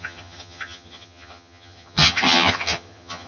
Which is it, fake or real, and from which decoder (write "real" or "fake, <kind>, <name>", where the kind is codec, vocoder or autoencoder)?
fake, vocoder, HiFi-GAN